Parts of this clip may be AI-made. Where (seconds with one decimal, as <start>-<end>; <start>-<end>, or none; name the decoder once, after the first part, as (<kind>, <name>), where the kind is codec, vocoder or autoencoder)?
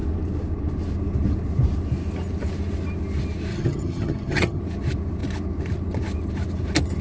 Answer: 3.5-4.6 (vocoder, HiFi-GAN)